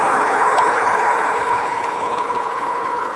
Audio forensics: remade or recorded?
remade